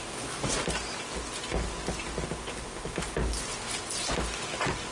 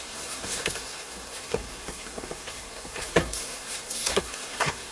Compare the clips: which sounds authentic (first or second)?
first